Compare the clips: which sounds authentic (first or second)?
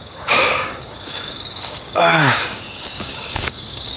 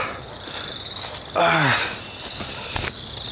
second